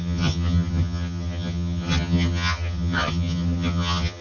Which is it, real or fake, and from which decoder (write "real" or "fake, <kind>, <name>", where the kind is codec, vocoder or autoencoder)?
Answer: fake, vocoder, HiFi-GAN